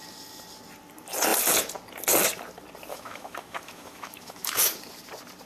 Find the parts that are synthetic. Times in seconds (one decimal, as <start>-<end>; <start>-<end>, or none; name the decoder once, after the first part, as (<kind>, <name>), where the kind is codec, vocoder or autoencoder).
2.9-4.6 (autoencoder, DAC-VAE)